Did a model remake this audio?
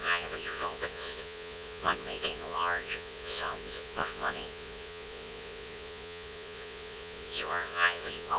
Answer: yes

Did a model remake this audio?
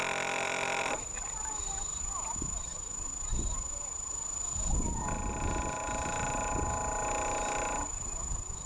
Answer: no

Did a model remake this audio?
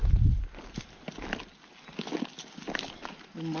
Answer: no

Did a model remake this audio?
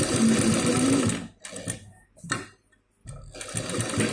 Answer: no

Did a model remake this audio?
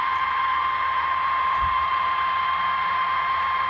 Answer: yes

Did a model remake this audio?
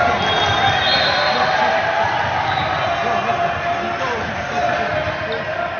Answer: no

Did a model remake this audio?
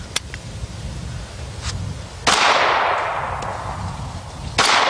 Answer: no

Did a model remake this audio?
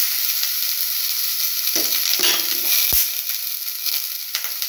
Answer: no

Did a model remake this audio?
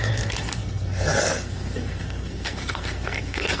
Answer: yes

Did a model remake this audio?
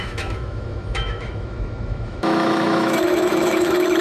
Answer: yes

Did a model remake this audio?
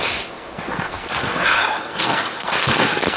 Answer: yes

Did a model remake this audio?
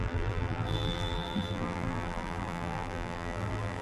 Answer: yes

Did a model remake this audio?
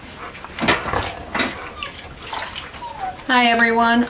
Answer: no